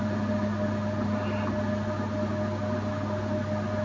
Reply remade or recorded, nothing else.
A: recorded